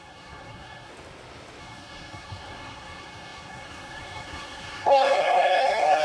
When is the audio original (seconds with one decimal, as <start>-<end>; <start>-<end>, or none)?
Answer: 0.9-1.6